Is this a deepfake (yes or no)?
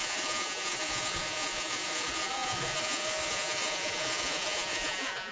yes